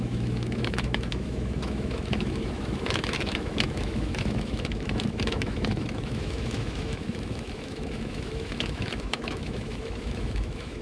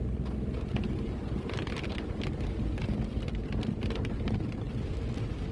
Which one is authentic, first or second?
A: second